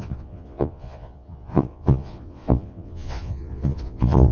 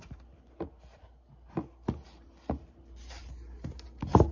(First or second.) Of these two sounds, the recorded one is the second